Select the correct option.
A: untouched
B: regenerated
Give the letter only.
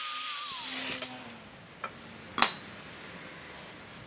A